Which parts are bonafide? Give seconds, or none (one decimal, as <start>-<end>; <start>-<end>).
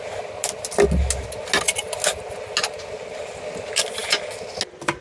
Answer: 0.0-5.0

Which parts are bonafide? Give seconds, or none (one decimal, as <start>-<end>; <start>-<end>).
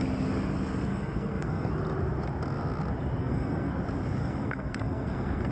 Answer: 0.0-0.9; 1.7-3.2; 3.8-4.2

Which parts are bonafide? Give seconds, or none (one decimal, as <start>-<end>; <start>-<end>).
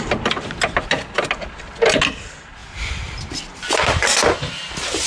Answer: 0.0-5.1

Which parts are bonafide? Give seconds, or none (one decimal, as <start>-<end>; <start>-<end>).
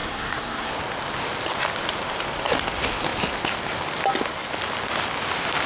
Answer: 0.7-5.7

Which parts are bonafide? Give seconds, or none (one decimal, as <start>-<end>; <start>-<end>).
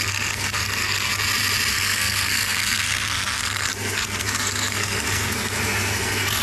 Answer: 1.1-1.7